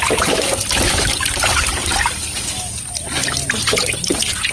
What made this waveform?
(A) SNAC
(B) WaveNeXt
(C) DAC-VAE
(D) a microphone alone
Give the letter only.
D